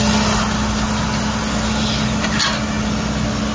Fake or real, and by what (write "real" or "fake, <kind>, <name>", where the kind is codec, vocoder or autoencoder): real